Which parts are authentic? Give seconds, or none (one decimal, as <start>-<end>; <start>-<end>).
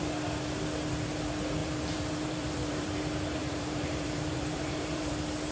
0.0-1.6; 3.0-3.4; 5.1-5.5